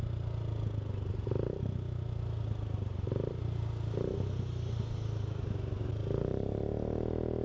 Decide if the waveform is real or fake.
real